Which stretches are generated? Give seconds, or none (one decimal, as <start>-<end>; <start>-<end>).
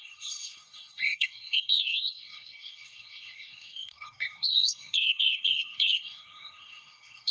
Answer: 0.0-7.3